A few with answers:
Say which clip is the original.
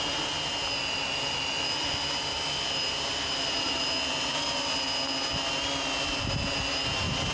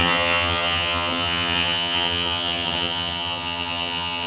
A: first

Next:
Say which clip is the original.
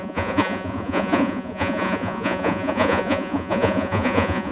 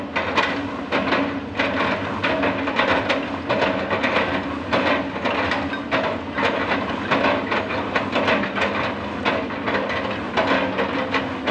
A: second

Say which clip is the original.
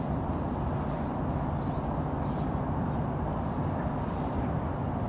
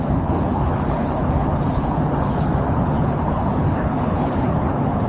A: first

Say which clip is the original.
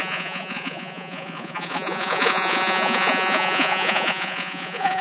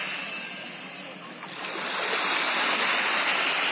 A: second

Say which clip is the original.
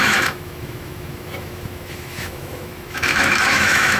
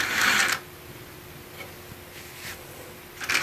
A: second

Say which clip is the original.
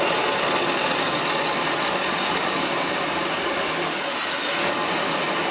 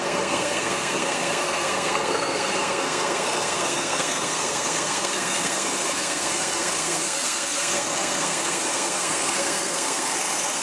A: first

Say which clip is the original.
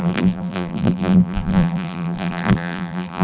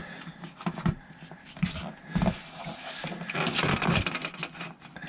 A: second